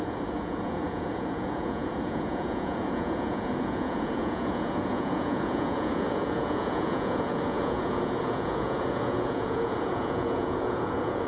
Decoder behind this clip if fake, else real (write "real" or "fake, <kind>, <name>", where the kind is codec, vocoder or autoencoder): fake, vocoder, Vocos